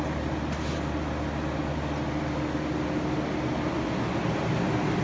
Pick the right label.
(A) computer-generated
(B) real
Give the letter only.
B